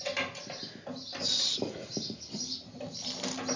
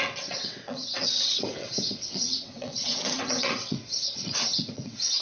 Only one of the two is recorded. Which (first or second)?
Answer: first